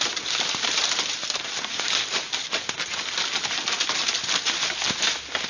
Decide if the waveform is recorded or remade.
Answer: recorded